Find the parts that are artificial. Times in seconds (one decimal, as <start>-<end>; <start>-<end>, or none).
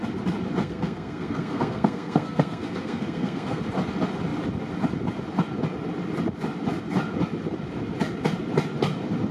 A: 0.6-3.6